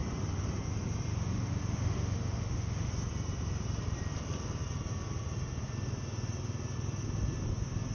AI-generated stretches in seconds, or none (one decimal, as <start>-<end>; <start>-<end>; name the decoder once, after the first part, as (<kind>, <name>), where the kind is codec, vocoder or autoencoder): 1.1-2.9 (autoencoder, DAC-VAE)